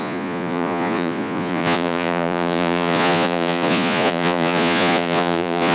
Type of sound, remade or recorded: remade